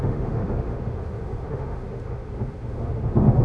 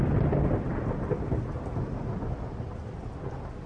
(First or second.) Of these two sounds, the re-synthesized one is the first